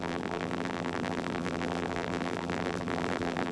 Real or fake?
fake